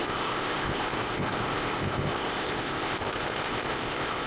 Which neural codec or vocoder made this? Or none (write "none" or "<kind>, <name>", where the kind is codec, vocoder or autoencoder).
codec, ZipCodec